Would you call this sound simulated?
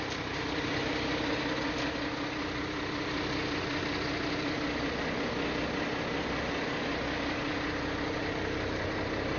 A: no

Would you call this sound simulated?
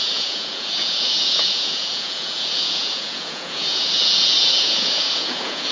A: yes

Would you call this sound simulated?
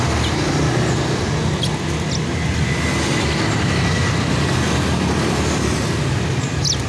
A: no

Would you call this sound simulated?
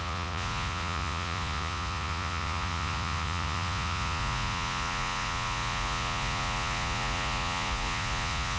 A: yes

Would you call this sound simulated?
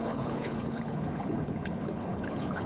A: yes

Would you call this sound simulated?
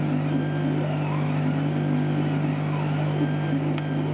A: no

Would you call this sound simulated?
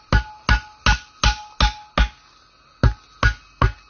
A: no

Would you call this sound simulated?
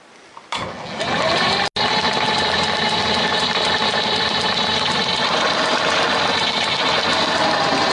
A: no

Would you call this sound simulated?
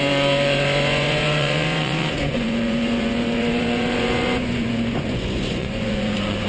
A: yes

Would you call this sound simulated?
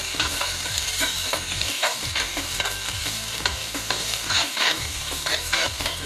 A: yes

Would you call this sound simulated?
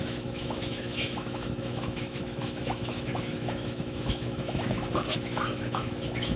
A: yes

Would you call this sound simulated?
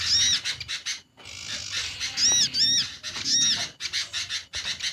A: no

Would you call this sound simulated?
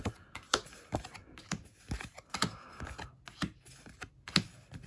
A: no